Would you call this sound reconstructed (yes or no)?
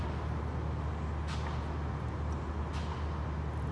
no